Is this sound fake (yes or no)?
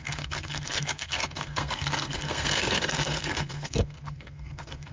yes